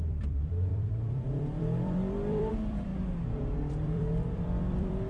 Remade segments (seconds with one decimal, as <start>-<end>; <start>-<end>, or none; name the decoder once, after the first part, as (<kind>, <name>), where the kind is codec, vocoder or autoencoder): 0.0-2.9 (vocoder, BigVGAN v2); 3.7-5.1